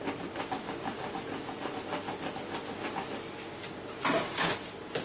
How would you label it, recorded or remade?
recorded